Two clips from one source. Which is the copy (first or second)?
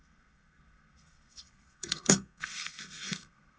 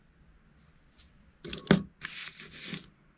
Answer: first